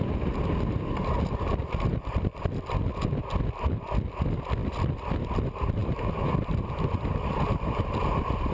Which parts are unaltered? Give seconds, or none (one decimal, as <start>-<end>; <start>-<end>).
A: 0.0-1.6; 2.6-4.6; 5.3-5.8; 6.7-8.5